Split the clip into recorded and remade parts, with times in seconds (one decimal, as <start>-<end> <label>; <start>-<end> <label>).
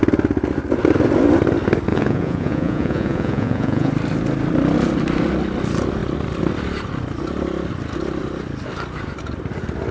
0.0-1.9 recorded; 1.9-3.9 remade; 3.9-9.9 recorded